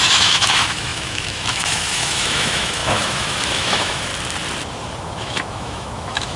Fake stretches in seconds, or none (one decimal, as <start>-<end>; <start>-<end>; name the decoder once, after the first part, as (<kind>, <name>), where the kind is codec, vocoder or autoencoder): 0.0-4.1 (autoencoder, DAC-VAE); 5.0-6.4